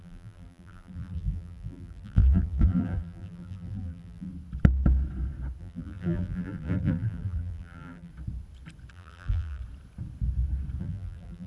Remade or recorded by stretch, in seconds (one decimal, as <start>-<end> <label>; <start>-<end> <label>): 0.0-4.3 remade; 4.3-5.6 recorded; 5.6-8.1 remade; 8.1-8.9 recorded; 8.9-9.6 remade; 9.6-10.8 recorded; 10.8-11.5 remade